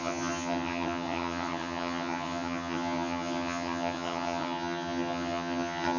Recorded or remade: remade